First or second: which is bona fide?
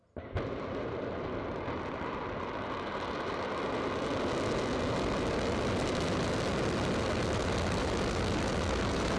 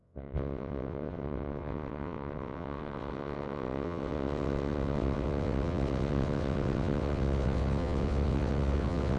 first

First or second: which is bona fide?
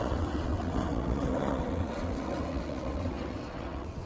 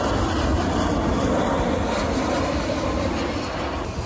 second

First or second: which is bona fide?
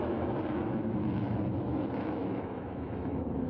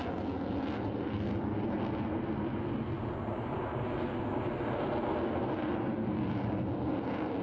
second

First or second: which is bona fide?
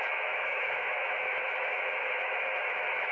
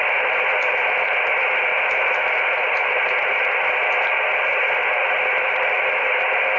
second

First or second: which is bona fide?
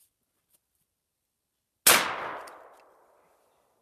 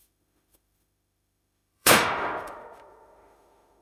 first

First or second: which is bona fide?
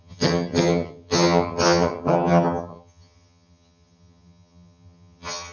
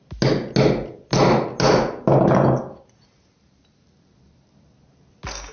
second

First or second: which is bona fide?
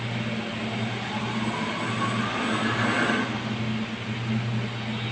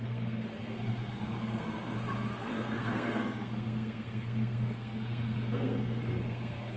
first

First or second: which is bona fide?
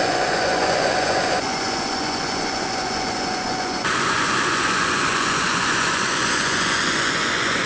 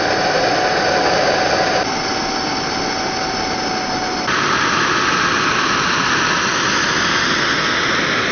second